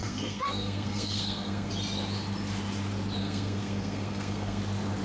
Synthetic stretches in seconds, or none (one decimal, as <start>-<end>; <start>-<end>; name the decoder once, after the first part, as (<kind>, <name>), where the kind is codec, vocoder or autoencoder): 0.0-1.7 (codec, SNAC); 3.2-4.6